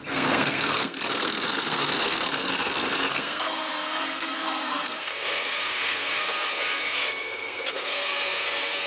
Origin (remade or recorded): remade